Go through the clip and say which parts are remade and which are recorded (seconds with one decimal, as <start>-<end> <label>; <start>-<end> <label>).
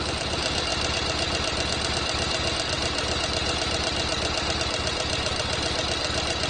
0.0-6.5 recorded